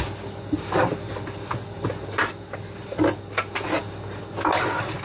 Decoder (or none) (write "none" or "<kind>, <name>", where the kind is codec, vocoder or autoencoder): none